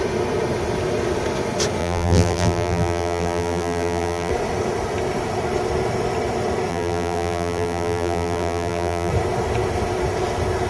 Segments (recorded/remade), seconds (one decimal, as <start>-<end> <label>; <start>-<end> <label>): 0.0-1.8 recorded; 1.8-4.3 remade; 4.3-6.7 recorded; 6.7-9.1 remade; 9.1-10.7 recorded